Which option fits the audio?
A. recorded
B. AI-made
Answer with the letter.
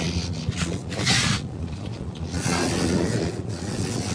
B